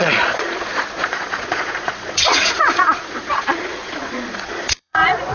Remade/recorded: remade